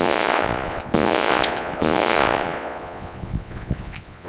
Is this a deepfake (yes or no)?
yes